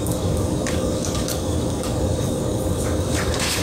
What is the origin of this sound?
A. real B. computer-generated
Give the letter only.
B